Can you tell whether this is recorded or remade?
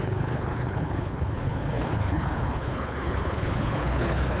remade